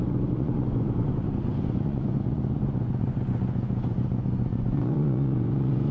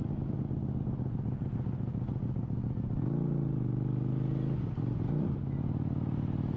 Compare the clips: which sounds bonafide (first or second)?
second